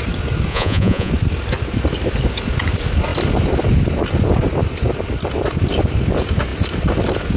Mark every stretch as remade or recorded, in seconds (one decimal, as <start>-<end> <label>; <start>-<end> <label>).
0.0-0.5 recorded; 0.5-1.1 remade; 1.1-7.4 recorded